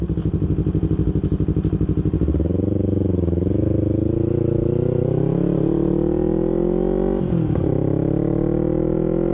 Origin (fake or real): real